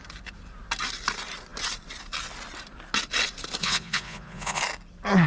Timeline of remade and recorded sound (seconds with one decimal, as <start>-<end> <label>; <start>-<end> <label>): 0.0-3.6 recorded; 3.6-4.6 remade; 4.6-5.3 recorded